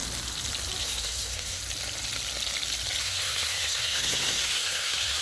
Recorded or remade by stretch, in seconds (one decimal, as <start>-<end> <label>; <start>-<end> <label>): 0.0-0.8 recorded; 0.8-1.6 remade; 1.6-3.0 recorded; 3.0-5.2 remade